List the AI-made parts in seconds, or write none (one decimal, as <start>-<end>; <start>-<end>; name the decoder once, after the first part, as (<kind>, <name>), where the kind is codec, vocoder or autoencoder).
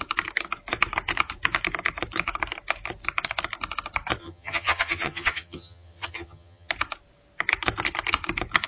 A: 4.2-6.7 (vocoder, HiFi-GAN)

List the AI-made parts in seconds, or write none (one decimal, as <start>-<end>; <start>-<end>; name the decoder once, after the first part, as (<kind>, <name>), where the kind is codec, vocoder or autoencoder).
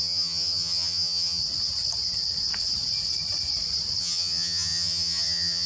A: 0.0-1.4 (vocoder, HiFi-GAN); 4.0-5.7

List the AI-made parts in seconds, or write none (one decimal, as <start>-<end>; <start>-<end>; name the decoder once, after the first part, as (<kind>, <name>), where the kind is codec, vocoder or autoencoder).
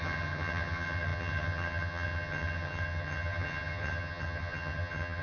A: 0.0-5.2 (vocoder, HiFi-GAN)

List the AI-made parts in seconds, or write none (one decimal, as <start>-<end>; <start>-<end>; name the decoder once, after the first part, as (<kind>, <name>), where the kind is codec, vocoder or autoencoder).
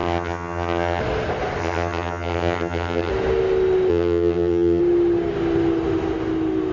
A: 0.0-1.0 (vocoder, HiFi-GAN); 1.6-3.1; 3.9-4.8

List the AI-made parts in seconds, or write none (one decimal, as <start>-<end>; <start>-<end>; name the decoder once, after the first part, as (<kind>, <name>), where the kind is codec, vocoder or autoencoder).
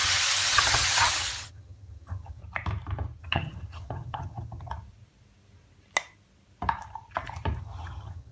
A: 0.0-2.4 (vocoder, HiFi-GAN); 3.2-4.7; 7.6-8.3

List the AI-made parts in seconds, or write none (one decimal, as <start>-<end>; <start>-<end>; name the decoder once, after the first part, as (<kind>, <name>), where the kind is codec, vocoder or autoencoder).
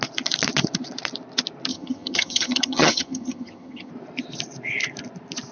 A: 1.7-3.9 (vocoder, HiFi-GAN)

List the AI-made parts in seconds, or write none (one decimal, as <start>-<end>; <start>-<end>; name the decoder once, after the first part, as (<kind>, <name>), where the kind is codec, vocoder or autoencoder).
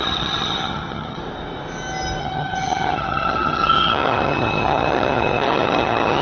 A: 0.0-1.2 (vocoder, HiFi-GAN); 2.2-6.2